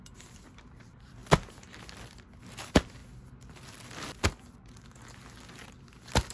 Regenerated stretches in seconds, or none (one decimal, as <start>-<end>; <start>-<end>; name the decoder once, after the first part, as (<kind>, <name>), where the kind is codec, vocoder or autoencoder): 0.0-1.2 (vocoder, BigVGAN v2); 2.4-3.0; 5.8-6.3